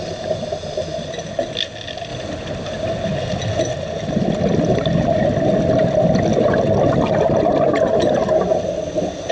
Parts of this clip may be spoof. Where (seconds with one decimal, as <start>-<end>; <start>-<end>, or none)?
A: none